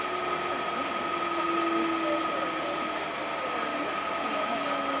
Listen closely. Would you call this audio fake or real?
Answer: real